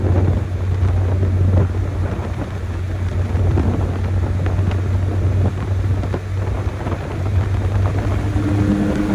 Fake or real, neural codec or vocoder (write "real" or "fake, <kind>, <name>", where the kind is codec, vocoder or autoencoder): real